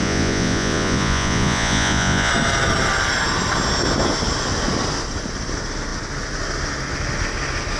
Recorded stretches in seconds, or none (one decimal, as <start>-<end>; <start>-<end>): 2.3-7.8